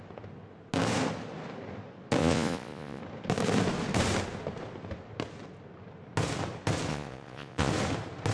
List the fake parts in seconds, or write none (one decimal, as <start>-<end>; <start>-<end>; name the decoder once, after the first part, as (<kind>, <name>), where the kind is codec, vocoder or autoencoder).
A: 2.2-3.0 (vocoder, Vocos); 6.9-7.7